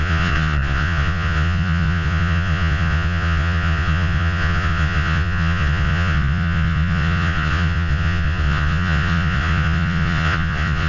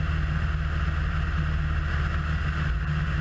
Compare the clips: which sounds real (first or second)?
second